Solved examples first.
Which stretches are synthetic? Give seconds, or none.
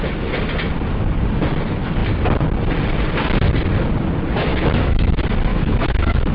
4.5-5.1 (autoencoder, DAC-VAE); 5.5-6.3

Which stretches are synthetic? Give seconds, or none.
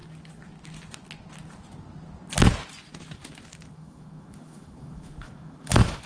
3.7-6.1 (autoencoder, DAC-VAE)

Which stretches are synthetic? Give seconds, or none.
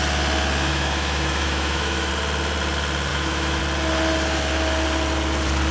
0.7-2.1 (autoencoder, DAC-VAE); 3.1-3.6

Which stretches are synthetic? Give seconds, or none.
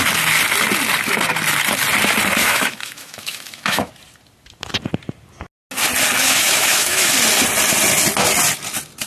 2.4-3.9 (autoencoder, DAC-VAE); 6.2-7.1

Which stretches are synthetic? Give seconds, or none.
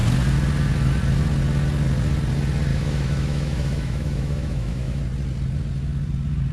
2.7-5.0 (autoencoder, DAC-VAE)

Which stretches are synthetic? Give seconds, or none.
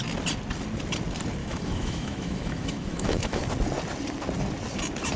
1.4-3.4 (autoencoder, DAC-VAE)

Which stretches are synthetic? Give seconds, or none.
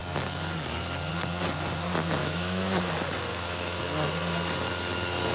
2.2-2.9 (autoencoder, DAC-VAE); 3.3-3.8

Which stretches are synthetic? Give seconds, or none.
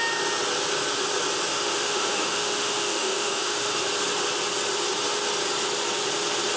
1.5-3.9 (autoencoder, DAC-VAE)